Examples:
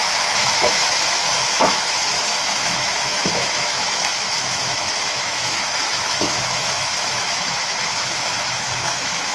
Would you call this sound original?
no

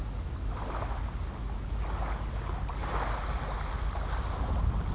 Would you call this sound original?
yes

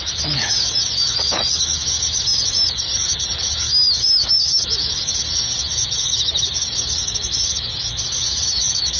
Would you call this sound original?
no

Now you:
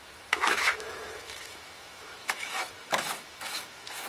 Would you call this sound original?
no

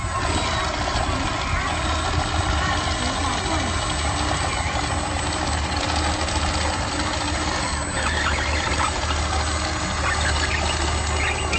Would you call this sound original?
yes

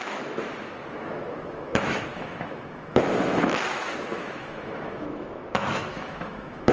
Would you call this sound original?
no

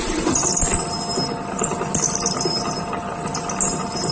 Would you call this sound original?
yes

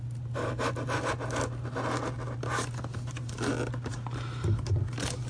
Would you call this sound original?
yes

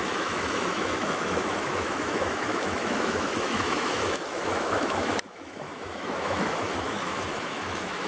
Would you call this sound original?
no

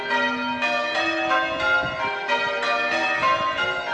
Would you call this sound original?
yes